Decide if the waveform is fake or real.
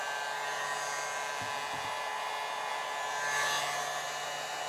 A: real